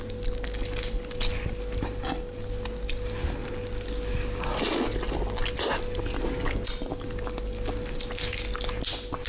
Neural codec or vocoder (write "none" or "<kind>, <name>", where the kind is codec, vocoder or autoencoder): none